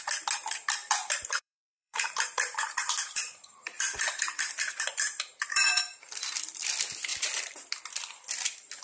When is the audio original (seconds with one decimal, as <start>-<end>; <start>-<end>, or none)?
0.0-0.8; 5.7-8.8